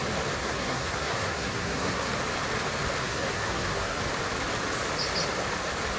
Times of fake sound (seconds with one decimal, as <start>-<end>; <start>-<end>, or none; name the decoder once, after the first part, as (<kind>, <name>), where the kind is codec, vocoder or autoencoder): 0.4-2.1 (codec, SNAC); 3.0-4.0